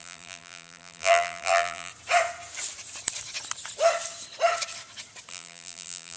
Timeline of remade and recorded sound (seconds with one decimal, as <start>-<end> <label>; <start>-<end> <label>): 0.0-1.9 remade; 1.9-5.3 recorded; 5.3-6.2 remade